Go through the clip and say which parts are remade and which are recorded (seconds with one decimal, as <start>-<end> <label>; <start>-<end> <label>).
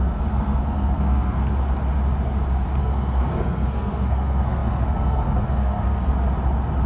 0.0-1.4 remade; 1.4-2.8 recorded; 2.8-6.1 remade; 6.1-6.9 recorded